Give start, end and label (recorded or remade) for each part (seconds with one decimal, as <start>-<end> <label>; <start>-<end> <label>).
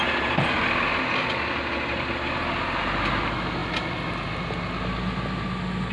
0.0-5.9 recorded